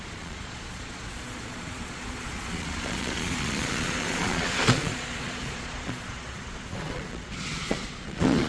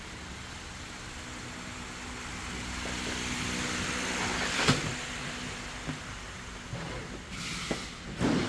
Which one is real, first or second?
second